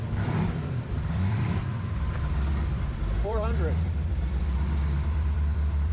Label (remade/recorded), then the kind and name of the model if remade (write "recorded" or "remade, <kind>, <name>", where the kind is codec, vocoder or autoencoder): remade, vocoder, BigVGAN v2